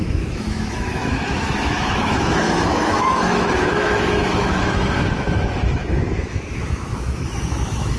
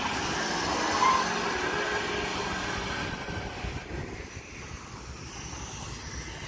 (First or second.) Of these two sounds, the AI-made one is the first